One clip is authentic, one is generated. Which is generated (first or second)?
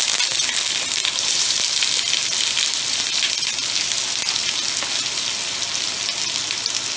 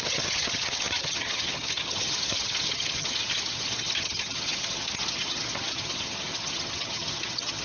second